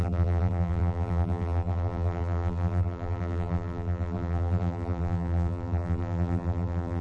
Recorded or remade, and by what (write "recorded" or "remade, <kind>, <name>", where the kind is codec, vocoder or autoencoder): remade, vocoder, BigVGAN v2